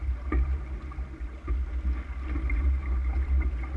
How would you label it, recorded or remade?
recorded